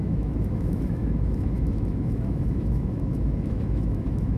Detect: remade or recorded remade